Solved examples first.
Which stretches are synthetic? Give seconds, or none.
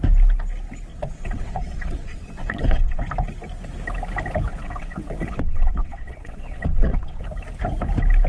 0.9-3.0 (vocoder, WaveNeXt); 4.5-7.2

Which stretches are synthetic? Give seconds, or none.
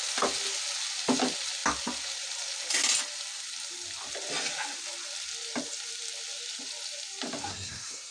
7.5-8.1 (codec, SNAC)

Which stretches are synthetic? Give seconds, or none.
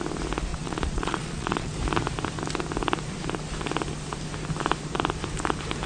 0.5-1.7 (vocoder, Vocos)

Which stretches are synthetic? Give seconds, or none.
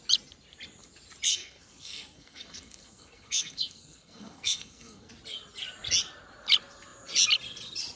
1.3-5.1 (codec, SNAC)